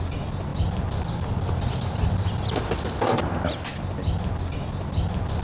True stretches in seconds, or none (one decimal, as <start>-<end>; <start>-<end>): 0.0-5.4